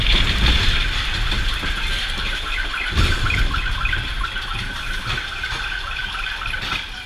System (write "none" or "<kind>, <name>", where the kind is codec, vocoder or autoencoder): none